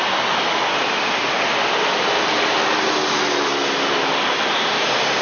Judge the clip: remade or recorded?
recorded